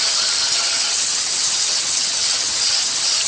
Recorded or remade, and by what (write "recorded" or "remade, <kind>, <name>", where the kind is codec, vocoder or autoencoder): remade, vocoder, HiFi-GAN